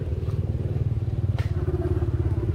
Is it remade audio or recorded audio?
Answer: remade